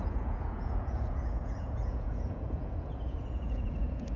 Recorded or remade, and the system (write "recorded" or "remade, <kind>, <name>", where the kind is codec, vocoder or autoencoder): remade, vocoder, Vocos